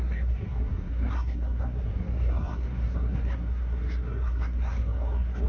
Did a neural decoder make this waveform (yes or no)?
yes